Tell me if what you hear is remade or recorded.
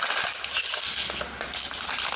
recorded